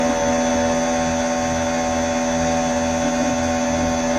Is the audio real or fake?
real